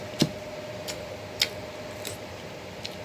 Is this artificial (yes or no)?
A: no